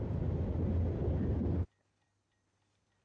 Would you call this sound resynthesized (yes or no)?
no